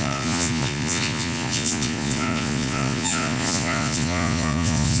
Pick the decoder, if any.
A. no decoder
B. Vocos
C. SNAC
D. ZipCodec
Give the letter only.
B